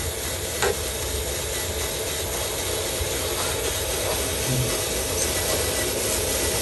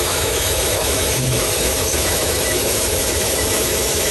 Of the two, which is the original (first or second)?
first